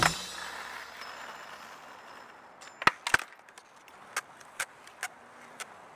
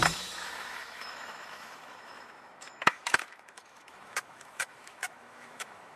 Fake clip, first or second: second